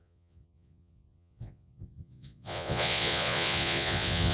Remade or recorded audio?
remade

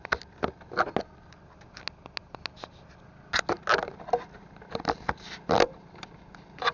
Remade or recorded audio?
recorded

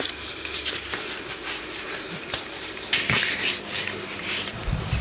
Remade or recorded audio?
remade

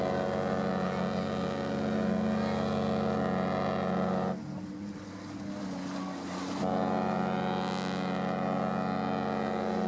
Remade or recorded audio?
recorded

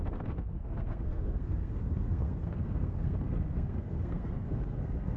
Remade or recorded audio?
remade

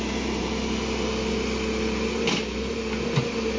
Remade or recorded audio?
recorded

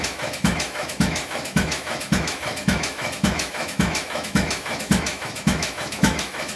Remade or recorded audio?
remade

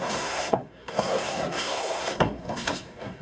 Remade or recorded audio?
remade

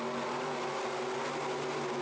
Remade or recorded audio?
recorded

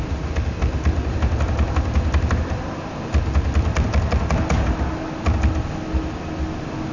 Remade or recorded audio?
recorded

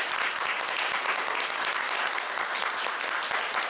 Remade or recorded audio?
recorded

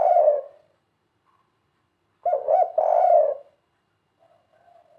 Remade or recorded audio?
recorded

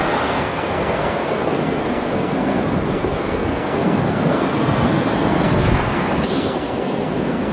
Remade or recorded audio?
remade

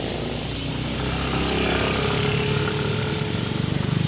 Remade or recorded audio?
recorded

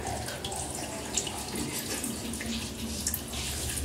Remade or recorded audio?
recorded